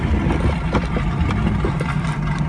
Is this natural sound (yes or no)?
yes